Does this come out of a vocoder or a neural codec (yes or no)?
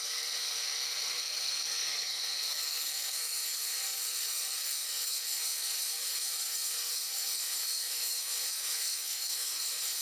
yes